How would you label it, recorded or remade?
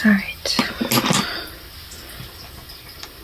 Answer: recorded